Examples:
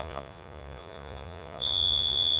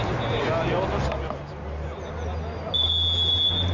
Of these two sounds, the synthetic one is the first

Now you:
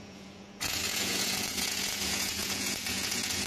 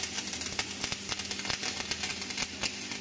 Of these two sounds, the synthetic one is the first